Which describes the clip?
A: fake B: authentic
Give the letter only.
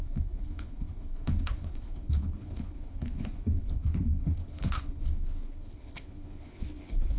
A